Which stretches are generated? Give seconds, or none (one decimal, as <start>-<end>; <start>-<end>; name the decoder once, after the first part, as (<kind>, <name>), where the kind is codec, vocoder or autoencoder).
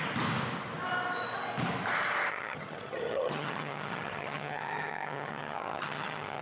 2.3-6.4 (vocoder, HiFi-GAN)